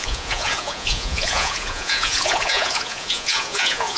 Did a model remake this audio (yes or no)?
yes